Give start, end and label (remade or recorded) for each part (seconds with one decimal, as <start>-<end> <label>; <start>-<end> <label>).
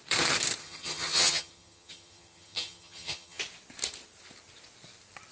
0.0-0.6 recorded; 0.6-3.4 remade; 3.4-5.3 recorded